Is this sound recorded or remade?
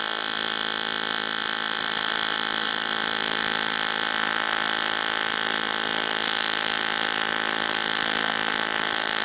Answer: recorded